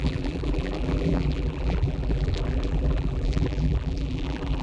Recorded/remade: remade